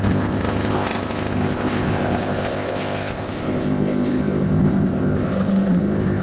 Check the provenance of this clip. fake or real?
fake